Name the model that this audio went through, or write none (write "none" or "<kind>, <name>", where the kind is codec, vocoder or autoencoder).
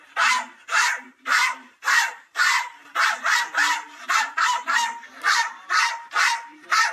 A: none